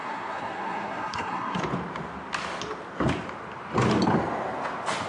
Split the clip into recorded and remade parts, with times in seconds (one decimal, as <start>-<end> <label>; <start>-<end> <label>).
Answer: 0.0-1.6 remade; 1.6-5.1 recorded